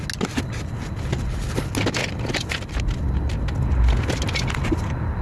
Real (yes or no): yes